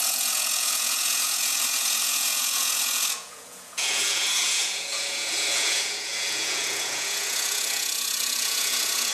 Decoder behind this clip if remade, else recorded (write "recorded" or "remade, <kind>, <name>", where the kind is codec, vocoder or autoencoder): remade, vocoder, Vocos